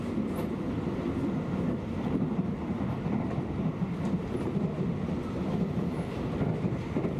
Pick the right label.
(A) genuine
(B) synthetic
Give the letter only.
A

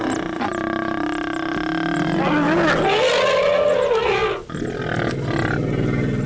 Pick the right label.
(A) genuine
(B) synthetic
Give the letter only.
A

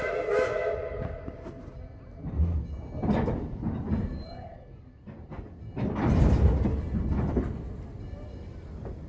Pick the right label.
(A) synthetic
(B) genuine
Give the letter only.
B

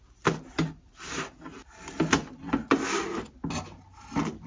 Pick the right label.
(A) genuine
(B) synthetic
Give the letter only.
A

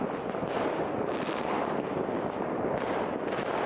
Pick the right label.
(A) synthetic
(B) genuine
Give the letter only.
B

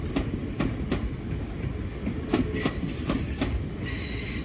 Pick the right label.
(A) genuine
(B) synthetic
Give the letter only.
A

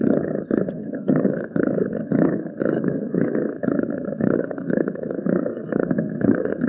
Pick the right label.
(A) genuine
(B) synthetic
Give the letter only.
B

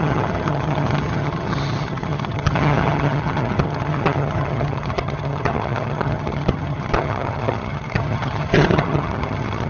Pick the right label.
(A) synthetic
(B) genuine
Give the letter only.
A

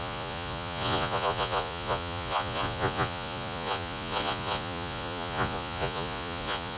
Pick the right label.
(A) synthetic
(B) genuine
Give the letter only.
A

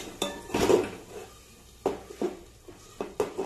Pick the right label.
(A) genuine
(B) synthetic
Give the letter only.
A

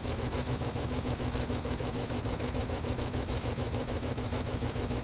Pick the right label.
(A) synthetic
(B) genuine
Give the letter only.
A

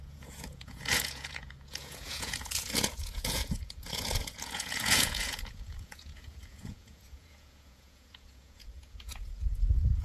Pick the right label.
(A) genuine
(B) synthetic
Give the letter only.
B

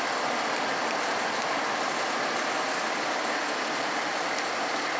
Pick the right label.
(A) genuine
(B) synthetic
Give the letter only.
A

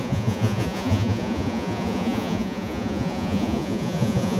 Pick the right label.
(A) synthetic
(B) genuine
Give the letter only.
A